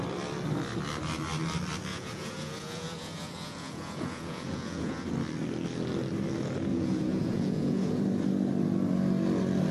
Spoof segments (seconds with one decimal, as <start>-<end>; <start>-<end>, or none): 1.9-5.1; 6.7-8.0